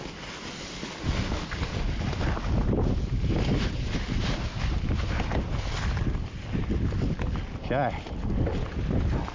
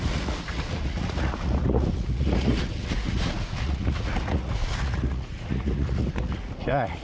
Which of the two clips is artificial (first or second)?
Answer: second